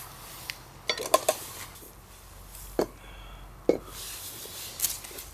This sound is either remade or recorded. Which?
recorded